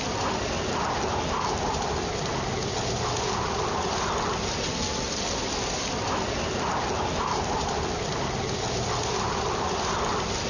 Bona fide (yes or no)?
yes